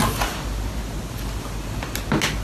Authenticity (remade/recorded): recorded